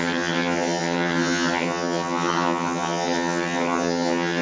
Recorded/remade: remade